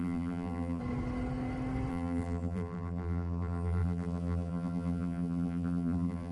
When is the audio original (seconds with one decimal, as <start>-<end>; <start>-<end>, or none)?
0.8-1.9